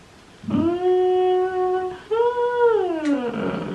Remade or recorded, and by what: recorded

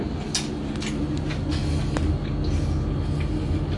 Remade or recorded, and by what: recorded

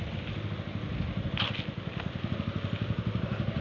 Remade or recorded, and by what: recorded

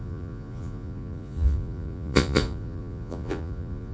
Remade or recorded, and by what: remade, vocoder, Vocos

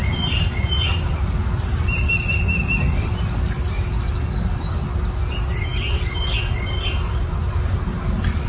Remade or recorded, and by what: recorded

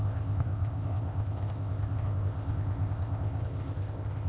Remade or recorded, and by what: remade, codec, ZipCodec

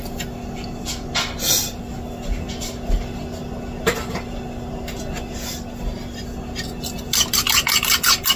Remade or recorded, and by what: recorded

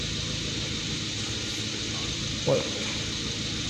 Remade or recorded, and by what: recorded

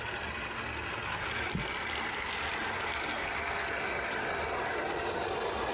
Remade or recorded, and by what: recorded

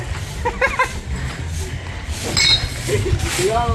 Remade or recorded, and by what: recorded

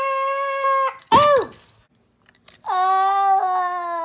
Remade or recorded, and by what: recorded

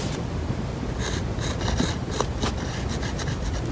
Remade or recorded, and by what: recorded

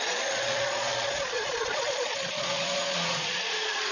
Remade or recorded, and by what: remade, vocoder, Vocos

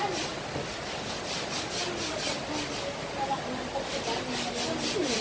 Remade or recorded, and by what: recorded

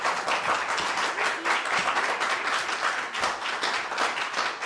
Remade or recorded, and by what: recorded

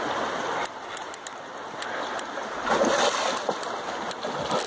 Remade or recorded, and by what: recorded